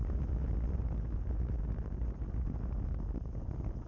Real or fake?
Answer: real